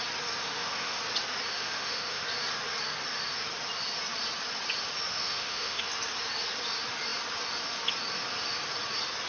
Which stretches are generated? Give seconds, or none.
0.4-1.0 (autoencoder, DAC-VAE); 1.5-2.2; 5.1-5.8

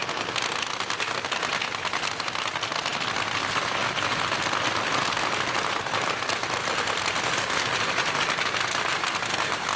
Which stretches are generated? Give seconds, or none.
none

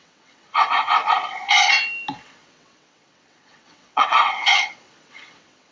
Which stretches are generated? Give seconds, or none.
0.0-1.0 (vocoder, WaveNeXt); 2.2-5.7

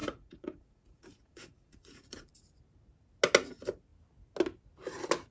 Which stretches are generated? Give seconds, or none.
0.0-2.3 (vocoder, Vocos)